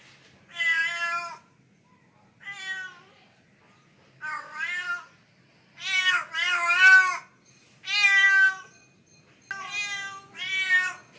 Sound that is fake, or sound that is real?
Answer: real